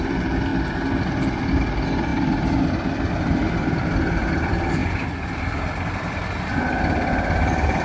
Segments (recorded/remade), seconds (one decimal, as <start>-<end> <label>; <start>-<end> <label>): 0.0-0.5 remade; 0.5-1.5 recorded; 1.5-7.8 remade